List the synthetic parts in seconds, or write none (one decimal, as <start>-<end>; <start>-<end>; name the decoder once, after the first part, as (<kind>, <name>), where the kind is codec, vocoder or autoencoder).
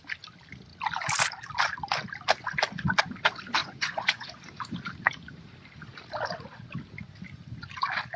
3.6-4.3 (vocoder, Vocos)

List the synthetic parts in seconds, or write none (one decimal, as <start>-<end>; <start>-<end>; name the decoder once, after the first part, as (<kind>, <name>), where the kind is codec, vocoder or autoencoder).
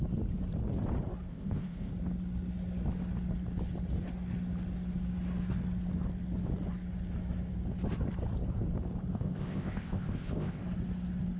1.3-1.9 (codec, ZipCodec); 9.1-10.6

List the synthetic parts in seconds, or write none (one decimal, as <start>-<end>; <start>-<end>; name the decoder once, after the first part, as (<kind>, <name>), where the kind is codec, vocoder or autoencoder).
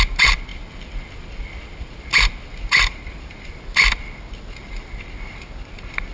0.5-4.2 (vocoder, BigVGAN v2)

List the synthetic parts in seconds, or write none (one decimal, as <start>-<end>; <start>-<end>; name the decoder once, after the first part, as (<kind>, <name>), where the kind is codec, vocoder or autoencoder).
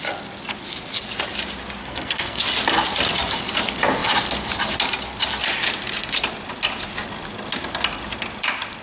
1.8-2.4 (codec, SNAC)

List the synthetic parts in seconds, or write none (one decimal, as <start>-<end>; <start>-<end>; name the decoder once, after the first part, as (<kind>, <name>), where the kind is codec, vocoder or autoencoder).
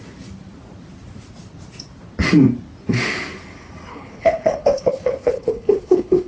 3.9-6.3 (codec, HILCodec)